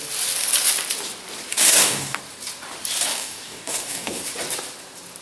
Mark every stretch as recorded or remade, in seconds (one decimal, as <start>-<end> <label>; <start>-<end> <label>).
0.0-1.5 recorded; 1.5-2.2 remade; 2.2-3.1 recorded; 3.1-4.2 remade; 4.2-5.2 recorded